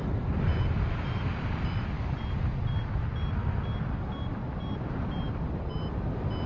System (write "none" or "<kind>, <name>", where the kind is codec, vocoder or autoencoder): none